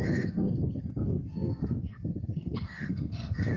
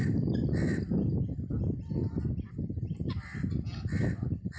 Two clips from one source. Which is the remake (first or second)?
first